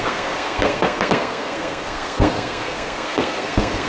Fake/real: fake